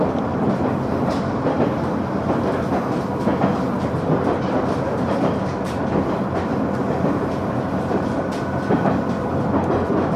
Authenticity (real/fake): fake